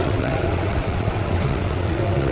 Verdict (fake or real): fake